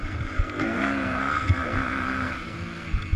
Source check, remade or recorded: remade